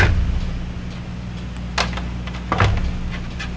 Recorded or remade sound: recorded